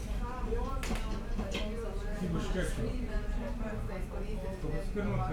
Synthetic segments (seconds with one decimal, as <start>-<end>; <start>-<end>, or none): 0.0-0.6; 2.3-3.7